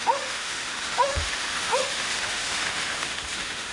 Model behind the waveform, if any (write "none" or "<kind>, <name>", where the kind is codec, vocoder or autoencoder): autoencoder, DAC-VAE